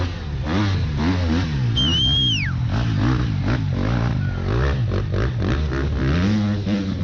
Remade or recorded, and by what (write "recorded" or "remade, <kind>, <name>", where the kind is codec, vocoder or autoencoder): recorded